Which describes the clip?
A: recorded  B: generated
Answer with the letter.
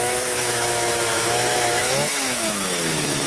B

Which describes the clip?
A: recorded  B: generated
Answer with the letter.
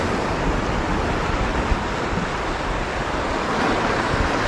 A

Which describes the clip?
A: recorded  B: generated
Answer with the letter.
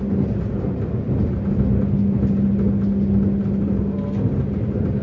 A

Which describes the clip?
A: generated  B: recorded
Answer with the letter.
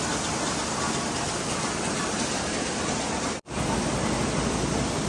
B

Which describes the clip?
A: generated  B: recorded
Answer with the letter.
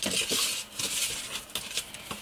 B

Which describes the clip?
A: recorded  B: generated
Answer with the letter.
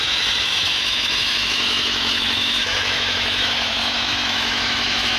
B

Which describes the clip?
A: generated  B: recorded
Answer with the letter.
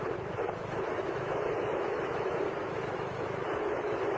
A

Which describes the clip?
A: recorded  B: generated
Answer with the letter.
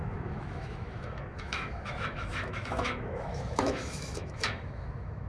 B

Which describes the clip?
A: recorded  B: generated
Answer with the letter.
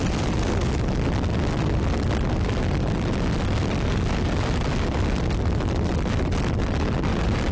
A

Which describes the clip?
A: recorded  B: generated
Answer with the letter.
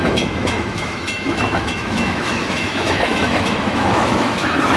B